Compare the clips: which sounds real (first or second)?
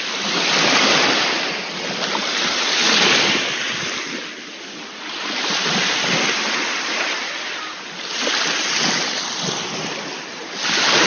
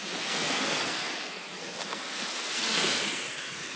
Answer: first